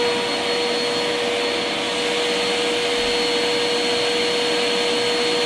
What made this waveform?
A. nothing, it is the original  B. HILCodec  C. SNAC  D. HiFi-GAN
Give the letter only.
A